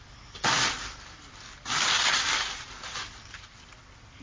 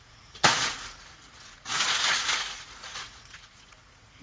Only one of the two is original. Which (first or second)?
first